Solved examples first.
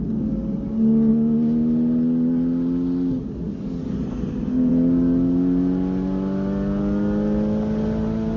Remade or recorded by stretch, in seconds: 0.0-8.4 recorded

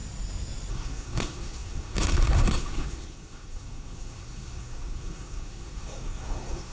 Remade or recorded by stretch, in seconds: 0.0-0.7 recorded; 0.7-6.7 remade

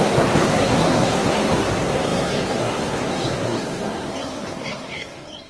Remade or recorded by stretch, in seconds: 0.0-5.5 remade